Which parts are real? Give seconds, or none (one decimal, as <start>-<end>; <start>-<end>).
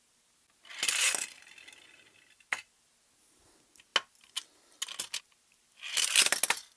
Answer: 0.0-6.8